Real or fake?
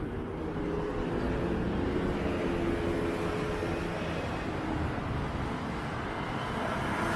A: real